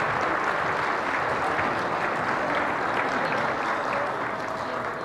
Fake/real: real